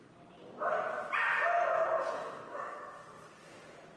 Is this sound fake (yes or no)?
no